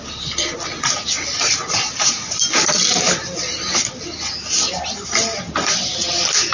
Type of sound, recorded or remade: recorded